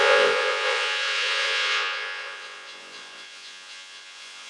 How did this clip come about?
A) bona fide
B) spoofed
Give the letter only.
B